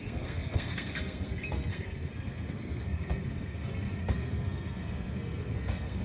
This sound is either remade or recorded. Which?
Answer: remade